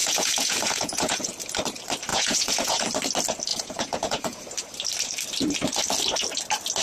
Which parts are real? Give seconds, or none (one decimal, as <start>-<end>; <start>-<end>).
1.3-2.1; 2.8-3.5; 4.4-6.8